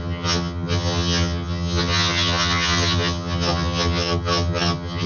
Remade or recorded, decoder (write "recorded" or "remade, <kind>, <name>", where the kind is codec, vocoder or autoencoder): remade, vocoder, HiFi-GAN